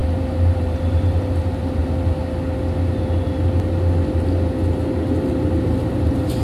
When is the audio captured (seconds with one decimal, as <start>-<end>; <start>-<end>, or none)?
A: 1.8-5.6